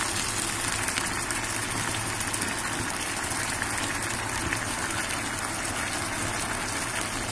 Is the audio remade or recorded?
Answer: recorded